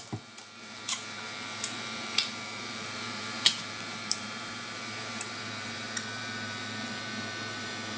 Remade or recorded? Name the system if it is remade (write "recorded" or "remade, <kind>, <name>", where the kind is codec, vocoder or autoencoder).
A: remade, vocoder, BigVGAN v2